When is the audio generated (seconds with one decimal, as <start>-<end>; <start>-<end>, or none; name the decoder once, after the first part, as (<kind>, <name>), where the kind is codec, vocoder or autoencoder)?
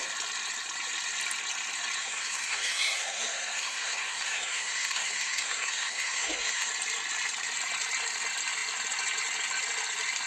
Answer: 2.0-6.7 (codec, SNAC)